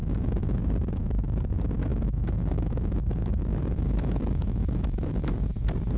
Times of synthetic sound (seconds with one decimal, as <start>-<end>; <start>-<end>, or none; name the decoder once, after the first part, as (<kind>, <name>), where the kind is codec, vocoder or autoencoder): 0.0-0.6 (autoencoder, DAC-VAE); 1.9-5.3